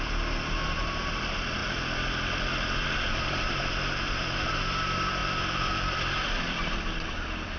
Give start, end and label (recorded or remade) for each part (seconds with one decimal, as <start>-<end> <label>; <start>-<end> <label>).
0.0-1.6 recorded; 1.6-4.5 remade; 4.5-5.2 recorded; 5.2-7.6 remade